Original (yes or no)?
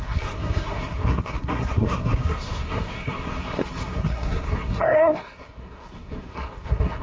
no